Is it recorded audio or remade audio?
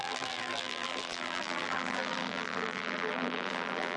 remade